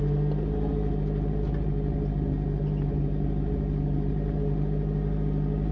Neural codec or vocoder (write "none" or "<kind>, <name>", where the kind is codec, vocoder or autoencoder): none